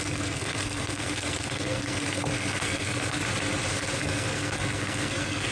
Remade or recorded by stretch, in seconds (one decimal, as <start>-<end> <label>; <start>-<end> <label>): 0.0-3.2 remade; 3.2-3.7 recorded; 3.7-5.5 remade